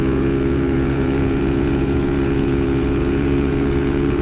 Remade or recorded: remade